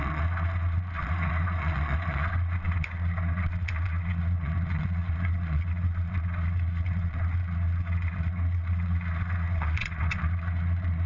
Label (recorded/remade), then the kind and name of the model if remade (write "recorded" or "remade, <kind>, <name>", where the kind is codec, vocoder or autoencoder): remade, vocoder, Vocos